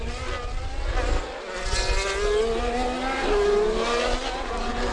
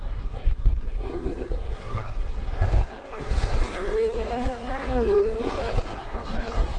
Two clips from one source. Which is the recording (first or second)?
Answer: first